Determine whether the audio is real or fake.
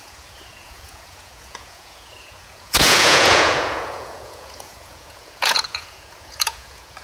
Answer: fake